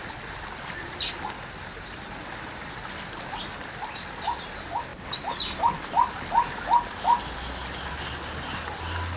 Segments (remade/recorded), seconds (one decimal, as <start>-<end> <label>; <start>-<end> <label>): 0.0-9.2 recorded

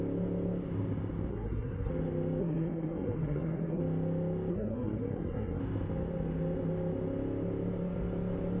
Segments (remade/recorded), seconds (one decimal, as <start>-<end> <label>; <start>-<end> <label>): 0.0-1.3 recorded; 1.3-1.9 remade; 1.9-2.4 recorded; 2.4-3.8 remade; 3.8-4.5 recorded; 4.5-5.6 remade; 5.6-8.6 recorded

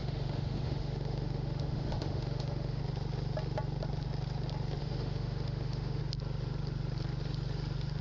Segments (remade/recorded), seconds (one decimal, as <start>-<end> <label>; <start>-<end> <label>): 0.0-2.8 remade; 2.8-4.8 recorded; 4.8-6.0 remade; 6.0-8.0 recorded

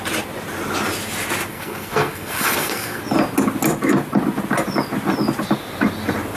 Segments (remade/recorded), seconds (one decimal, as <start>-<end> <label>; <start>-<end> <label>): 0.0-1.5 recorded; 1.5-3.0 remade; 3.0-6.4 recorded

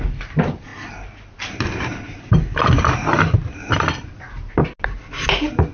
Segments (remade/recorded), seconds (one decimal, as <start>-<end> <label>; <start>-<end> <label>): 0.0-5.7 recorded